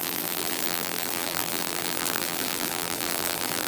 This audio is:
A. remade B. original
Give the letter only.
A